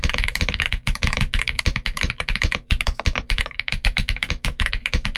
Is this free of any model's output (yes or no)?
no